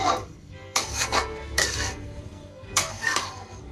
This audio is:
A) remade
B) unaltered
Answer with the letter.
A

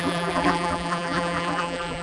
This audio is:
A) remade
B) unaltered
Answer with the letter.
A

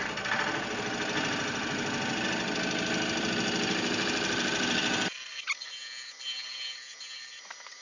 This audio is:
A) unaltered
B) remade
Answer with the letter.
A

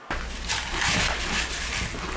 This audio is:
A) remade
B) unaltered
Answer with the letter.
B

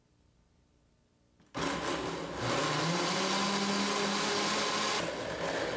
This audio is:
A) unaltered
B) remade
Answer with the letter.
A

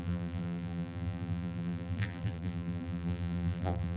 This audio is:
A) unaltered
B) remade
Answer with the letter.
B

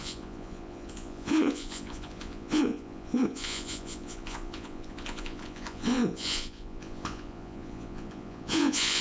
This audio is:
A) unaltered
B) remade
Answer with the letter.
B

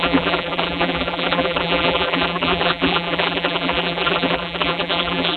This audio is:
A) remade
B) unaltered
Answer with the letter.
A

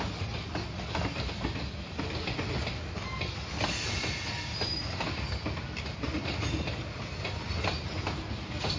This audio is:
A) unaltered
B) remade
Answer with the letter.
A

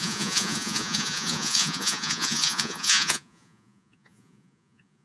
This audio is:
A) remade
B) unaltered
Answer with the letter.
A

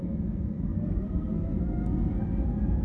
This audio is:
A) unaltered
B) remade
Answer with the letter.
B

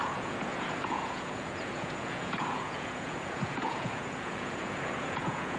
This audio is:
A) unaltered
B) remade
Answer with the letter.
B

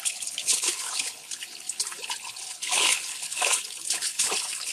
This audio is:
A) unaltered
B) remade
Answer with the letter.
B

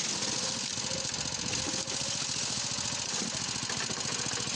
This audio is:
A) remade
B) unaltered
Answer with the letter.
B